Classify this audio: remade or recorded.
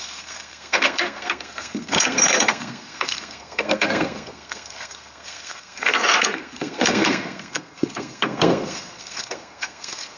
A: remade